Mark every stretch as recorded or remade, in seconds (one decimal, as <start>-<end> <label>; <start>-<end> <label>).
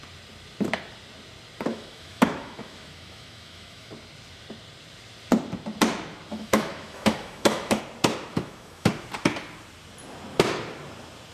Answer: 0.0-1.7 recorded; 1.7-3.9 remade; 3.9-6.3 recorded; 6.3-7.8 remade; 7.8-8.3 recorded; 8.3-8.9 remade; 8.9-11.3 recorded